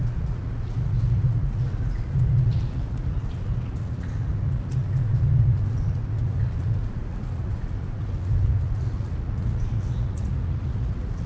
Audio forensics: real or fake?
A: fake